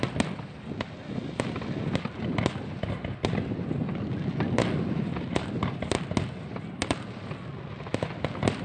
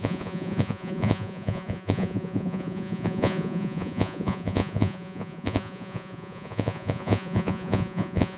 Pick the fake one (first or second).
second